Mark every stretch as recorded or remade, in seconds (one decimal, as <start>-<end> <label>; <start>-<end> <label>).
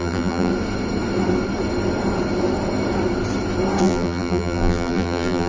0.0-0.5 remade; 0.5-3.8 recorded; 3.8-5.5 remade